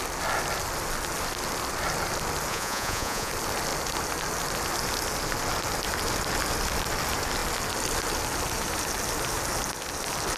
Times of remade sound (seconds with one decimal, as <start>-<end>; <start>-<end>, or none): 2.5-3.3